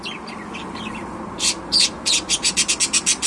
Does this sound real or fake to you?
real